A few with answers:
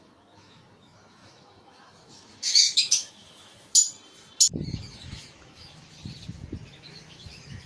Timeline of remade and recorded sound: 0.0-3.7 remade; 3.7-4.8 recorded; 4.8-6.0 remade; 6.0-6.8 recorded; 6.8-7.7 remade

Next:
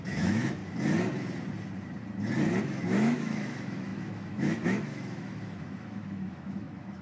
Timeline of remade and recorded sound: 0.0-0.6 remade; 0.6-2.6 recorded; 2.6-7.0 remade

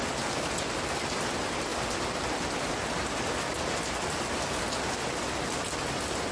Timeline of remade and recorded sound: 0.0-6.3 recorded

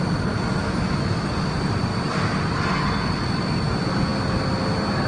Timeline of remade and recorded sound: 0.0-0.6 recorded; 0.6-1.3 remade; 1.3-5.1 recorded